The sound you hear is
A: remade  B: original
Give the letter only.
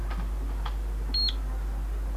B